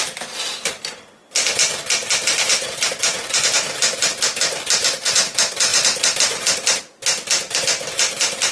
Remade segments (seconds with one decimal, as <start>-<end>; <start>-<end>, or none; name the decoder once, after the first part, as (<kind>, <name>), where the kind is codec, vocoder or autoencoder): 2.0-2.9 (vocoder, BigVGAN v2)